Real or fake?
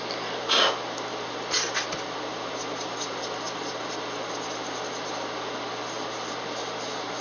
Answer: real